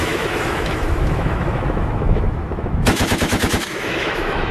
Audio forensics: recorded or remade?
remade